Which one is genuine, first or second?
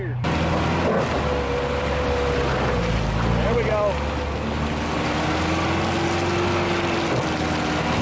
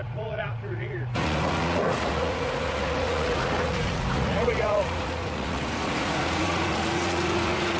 first